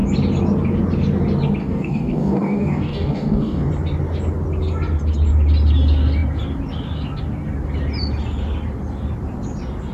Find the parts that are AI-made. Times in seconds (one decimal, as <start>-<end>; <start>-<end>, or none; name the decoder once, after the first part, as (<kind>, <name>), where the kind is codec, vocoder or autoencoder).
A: 1.6-3.7 (codec, DAC)